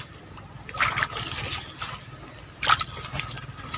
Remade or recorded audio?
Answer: recorded